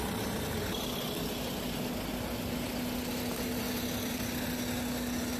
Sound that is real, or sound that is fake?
real